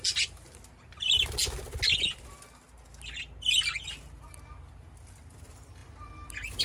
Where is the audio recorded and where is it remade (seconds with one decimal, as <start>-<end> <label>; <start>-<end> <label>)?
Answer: 0.0-6.6 recorded